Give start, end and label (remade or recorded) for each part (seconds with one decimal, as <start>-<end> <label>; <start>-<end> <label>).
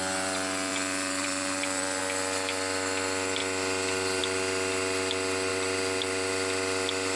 0.0-0.7 recorded; 0.7-2.0 remade; 2.0-5.5 recorded; 5.5-7.2 remade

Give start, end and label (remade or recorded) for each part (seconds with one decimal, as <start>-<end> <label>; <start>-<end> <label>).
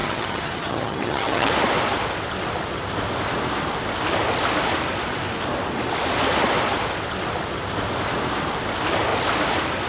0.0-1.5 remade; 1.5-9.9 recorded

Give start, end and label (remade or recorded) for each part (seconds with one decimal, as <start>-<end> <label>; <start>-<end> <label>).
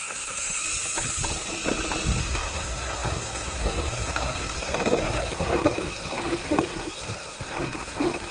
0.0-0.6 remade; 0.6-2.2 recorded; 2.2-8.3 remade